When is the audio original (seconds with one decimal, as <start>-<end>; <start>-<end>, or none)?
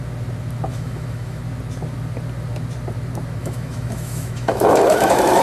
0.0-0.7; 1.4-3.4